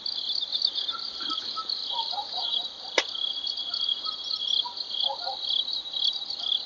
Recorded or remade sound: recorded